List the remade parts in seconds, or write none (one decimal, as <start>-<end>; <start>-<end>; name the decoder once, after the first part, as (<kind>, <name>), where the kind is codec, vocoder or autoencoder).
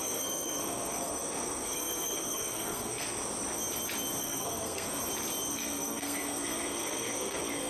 0.0-3.2 (codec, SNAC); 4.2-5.0; 5.5-7.7